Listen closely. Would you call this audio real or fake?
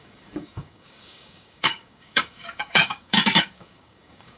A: fake